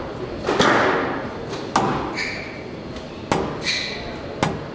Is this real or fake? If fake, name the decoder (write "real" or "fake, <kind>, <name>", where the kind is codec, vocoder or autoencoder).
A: real